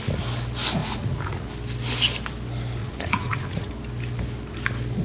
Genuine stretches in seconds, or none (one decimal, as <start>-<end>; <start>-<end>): 0.0-0.8; 1.5-2.8; 3.7-5.0